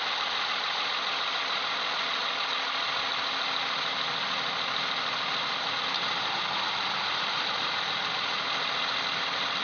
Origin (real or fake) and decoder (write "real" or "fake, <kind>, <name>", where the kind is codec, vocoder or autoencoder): real